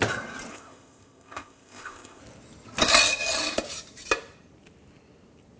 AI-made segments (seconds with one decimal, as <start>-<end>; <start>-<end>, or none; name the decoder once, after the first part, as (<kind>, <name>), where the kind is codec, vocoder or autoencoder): 0.5-2.2 (codec, ZipCodec)